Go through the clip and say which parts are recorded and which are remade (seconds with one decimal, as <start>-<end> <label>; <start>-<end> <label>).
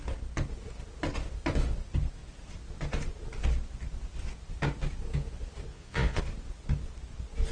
0.0-5.7 recorded; 5.7-6.2 remade; 6.2-7.5 recorded